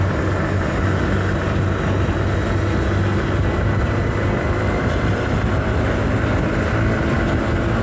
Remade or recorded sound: recorded